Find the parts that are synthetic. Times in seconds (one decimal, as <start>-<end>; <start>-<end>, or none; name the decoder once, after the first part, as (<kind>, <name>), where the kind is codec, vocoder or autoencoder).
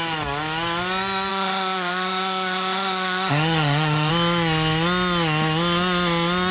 1.3-4.1 (autoencoder, DAC-VAE)